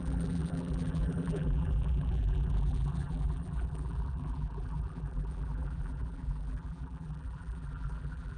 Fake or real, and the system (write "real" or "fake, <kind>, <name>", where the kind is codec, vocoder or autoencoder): fake, vocoder, BigVGAN v2